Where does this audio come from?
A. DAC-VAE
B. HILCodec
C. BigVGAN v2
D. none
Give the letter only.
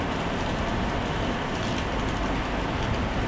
D